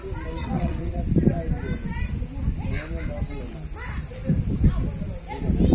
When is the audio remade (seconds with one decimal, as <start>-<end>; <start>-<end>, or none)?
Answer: 0.4-1.0